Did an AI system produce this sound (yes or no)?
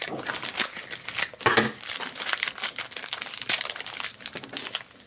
no